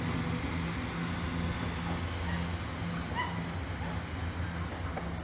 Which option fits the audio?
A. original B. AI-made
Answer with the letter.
A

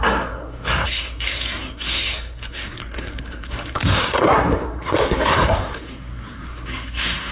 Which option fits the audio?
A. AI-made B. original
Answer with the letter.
A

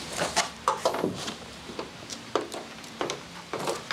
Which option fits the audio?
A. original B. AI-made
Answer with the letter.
B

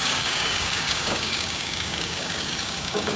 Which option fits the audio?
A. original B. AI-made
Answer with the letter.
B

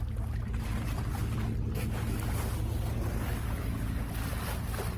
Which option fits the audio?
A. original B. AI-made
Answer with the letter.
A